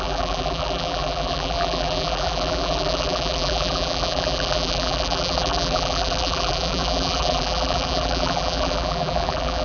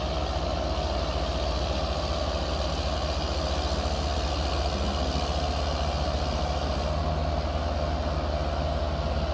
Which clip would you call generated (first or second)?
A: first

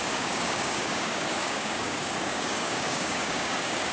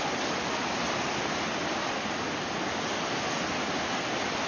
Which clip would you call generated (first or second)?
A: first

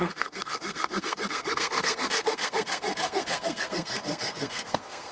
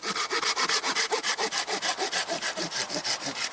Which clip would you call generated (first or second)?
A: first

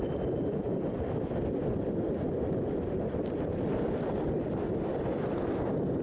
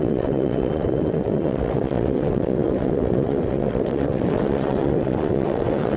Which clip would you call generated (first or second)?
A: second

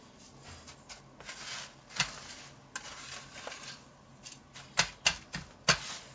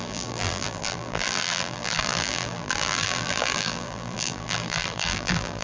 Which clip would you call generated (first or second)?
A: second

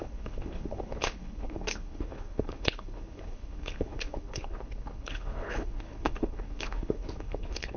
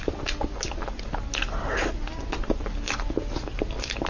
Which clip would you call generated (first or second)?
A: first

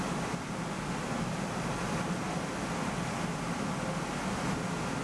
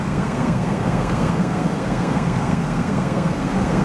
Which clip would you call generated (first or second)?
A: second